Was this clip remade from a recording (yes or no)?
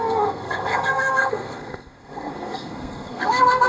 yes